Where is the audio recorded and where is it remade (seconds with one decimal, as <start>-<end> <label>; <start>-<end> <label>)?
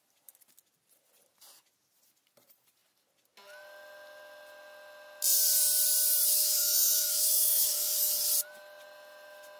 0.0-6.3 recorded; 6.3-8.1 remade; 8.1-9.6 recorded